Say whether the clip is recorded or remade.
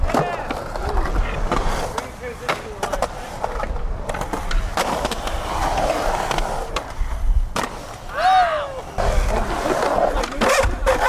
recorded